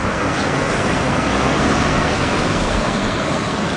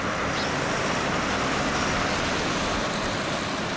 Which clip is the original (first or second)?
second